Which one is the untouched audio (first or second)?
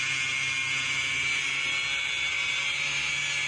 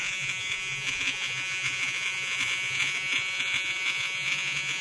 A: first